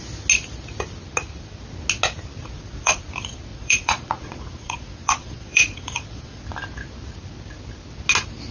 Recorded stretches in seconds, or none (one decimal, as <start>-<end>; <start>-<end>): 0.0-2.4; 3.0-3.5; 6.4-8.5